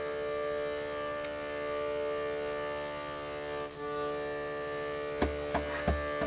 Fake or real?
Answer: real